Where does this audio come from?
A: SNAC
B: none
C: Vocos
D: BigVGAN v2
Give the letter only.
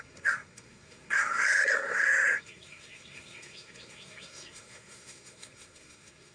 A